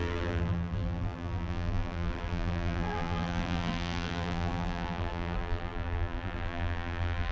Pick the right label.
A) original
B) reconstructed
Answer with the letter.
B